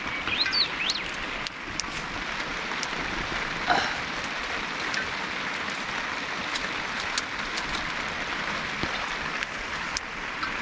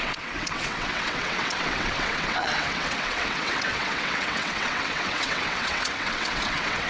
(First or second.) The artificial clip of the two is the second